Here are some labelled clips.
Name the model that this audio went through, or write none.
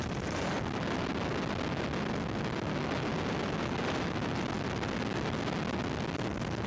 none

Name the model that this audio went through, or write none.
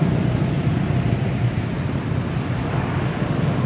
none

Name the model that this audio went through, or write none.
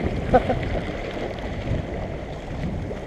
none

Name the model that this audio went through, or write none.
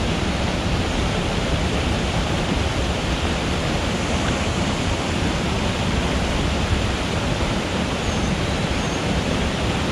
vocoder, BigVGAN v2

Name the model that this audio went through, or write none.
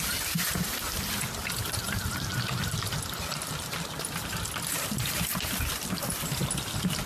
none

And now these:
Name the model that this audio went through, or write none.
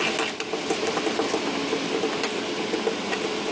none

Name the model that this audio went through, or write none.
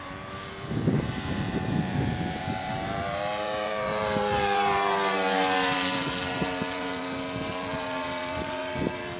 vocoder, BigVGAN v2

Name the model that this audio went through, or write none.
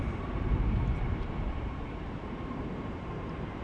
vocoder, BigVGAN v2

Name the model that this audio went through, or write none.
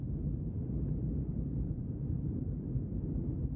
vocoder, BigVGAN v2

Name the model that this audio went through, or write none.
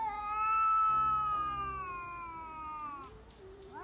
none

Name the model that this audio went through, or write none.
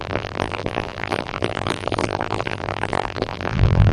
vocoder, BigVGAN v2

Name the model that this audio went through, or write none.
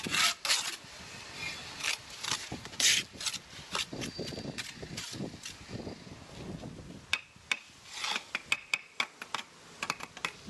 none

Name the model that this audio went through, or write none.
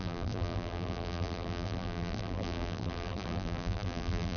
vocoder, BigVGAN v2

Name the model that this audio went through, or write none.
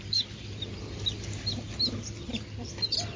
none